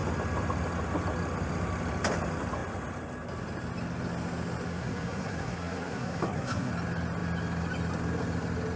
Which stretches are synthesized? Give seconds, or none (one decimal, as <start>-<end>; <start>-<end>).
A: 4.7-6.7